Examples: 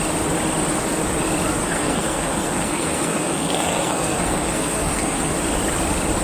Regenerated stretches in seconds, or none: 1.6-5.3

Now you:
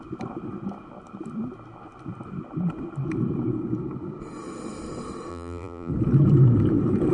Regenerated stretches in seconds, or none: 5.3-5.9

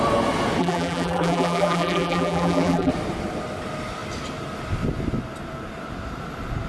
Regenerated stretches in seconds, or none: 0.6-2.9

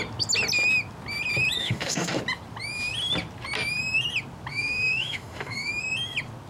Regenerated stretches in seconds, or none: 1.6-2.2; 4.5-5.7

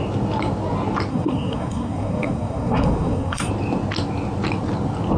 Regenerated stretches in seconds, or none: 1.1-3.5